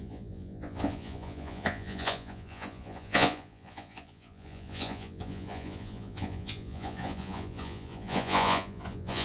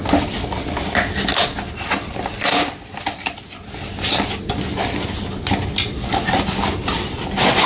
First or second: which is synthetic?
first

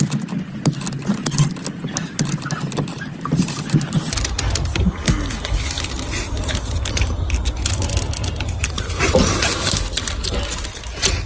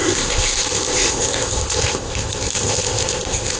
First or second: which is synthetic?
second